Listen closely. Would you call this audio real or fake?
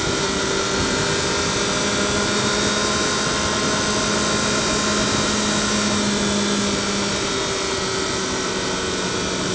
real